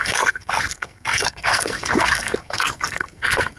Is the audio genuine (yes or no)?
no